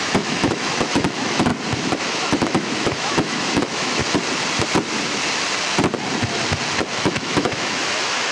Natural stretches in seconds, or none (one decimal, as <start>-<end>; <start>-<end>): 1.5-2.0; 4.0-6.9